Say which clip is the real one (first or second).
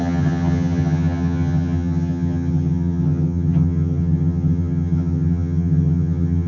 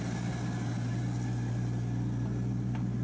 second